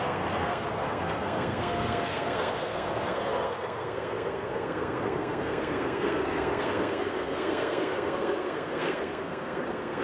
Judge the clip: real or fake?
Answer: fake